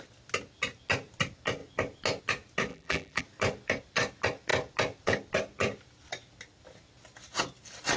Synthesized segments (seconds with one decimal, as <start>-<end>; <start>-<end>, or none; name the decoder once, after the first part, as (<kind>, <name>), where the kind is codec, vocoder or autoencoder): 2.7-3.2 (vocoder, BigVGAN v2)